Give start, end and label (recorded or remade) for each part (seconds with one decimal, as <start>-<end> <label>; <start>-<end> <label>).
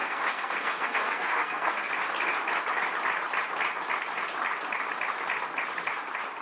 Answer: 0.0-1.9 remade; 1.9-6.4 recorded